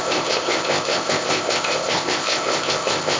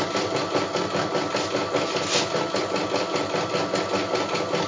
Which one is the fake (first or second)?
first